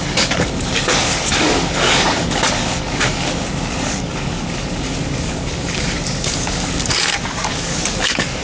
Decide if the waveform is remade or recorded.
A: remade